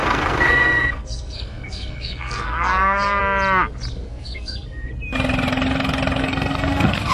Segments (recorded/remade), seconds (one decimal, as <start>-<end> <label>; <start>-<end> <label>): 0.0-3.2 remade; 3.2-3.9 recorded; 3.9-4.9 remade; 4.9-6.2 recorded; 6.2-7.1 remade